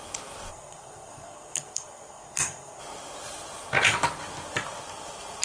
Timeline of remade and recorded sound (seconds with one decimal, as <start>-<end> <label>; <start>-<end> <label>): 0.0-0.5 recorded; 0.5-2.8 remade; 2.8-5.4 recorded